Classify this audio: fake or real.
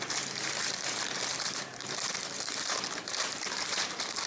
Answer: fake